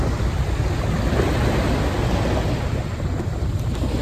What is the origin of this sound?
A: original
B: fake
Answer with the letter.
A